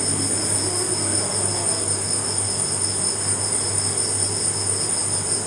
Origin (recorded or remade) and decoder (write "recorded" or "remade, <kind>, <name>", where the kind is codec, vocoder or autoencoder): recorded